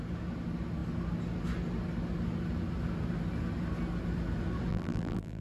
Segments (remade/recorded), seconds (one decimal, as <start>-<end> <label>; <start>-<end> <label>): 0.0-4.7 recorded; 4.7-5.4 remade